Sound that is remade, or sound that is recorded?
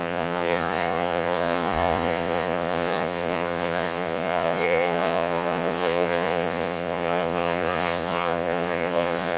remade